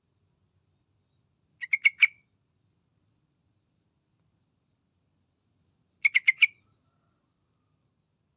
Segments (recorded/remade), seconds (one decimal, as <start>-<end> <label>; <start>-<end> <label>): 0.0-8.4 recorded